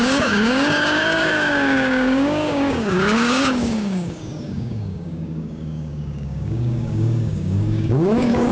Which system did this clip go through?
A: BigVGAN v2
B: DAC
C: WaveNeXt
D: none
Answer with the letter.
B